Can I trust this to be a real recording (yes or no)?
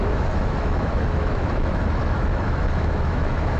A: no